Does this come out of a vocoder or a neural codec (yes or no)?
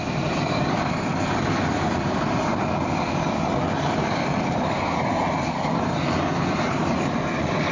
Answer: yes